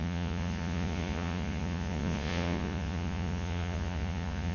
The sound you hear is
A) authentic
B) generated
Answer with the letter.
B